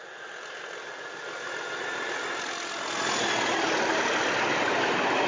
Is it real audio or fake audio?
real